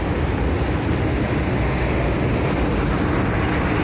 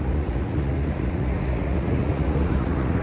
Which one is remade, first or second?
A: second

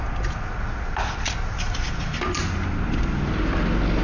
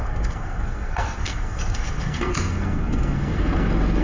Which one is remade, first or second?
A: second